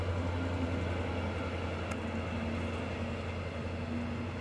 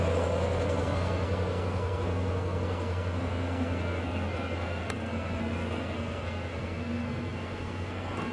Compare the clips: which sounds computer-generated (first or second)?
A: second